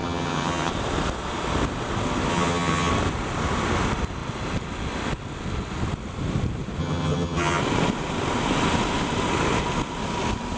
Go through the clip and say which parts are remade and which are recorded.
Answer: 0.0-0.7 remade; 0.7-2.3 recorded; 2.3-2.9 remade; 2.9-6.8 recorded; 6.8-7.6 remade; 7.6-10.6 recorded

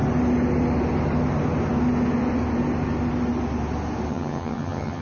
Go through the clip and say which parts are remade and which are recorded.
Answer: 0.0-4.1 recorded; 4.1-5.0 remade

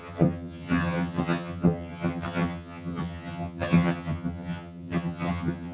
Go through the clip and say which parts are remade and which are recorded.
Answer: 0.0-5.7 remade

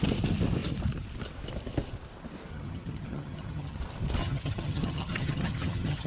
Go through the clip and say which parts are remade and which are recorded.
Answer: 0.0-2.5 recorded; 2.5-3.8 remade; 3.8-4.2 recorded; 4.2-6.1 remade

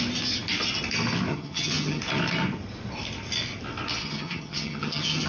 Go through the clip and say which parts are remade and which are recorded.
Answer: 0.0-1.3 recorded; 1.3-2.0 remade; 2.0-4.0 recorded; 4.0-5.3 remade

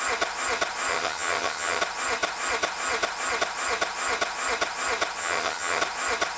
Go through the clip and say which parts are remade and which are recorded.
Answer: 0.0-0.9 recorded; 0.9-1.8 remade; 1.8-5.2 recorded; 5.2-5.8 remade; 5.8-6.4 recorded